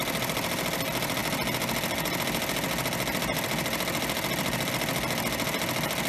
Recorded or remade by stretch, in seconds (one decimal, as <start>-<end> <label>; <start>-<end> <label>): 0.0-6.1 recorded